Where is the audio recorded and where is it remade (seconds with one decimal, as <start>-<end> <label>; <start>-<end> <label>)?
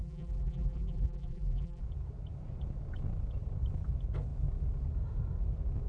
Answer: 0.0-1.8 remade; 1.8-5.9 recorded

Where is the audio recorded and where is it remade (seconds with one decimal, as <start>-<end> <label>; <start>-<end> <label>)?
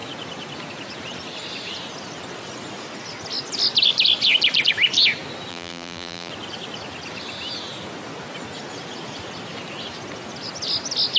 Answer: 0.0-5.5 recorded; 5.5-6.3 remade; 6.3-11.2 recorded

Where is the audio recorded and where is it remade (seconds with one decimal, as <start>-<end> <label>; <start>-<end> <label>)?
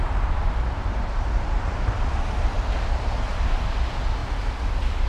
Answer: 0.0-0.4 recorded; 0.4-3.1 remade; 3.1-4.2 recorded; 4.2-5.1 remade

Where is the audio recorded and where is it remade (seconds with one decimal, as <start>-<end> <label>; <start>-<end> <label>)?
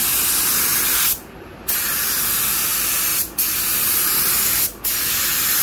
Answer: 0.0-5.6 recorded